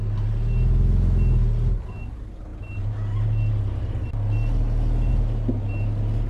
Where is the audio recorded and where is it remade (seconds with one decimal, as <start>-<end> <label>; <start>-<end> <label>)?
0.0-6.3 recorded

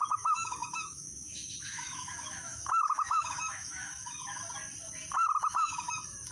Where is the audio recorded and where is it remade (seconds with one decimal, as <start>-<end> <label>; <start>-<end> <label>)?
0.0-4.4 remade; 4.4-5.4 recorded; 5.4-6.3 remade

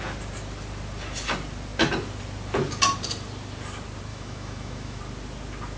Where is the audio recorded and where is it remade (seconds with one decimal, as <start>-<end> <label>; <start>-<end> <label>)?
0.0-4.1 recorded; 4.1-5.0 remade; 5.0-5.8 recorded

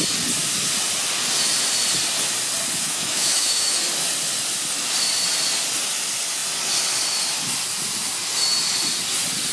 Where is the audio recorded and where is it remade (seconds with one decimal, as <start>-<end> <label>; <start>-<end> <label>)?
0.0-2.8 recorded; 2.8-3.8 remade; 3.8-9.5 recorded

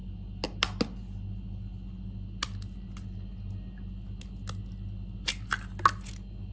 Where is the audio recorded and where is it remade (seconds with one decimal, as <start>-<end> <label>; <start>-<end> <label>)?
0.0-6.5 recorded